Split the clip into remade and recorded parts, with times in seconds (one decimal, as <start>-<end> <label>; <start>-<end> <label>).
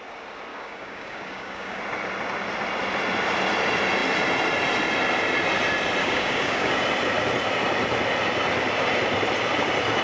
0.0-0.5 recorded; 0.5-1.8 remade; 1.8-6.0 recorded; 6.0-6.7 remade; 6.7-10.0 recorded